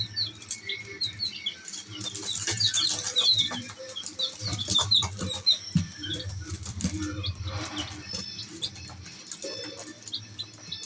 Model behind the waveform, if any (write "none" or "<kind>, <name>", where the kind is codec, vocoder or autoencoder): vocoder, BigVGAN v2